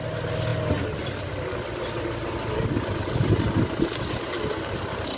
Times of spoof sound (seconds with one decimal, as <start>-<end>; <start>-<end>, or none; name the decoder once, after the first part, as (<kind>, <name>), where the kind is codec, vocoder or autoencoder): none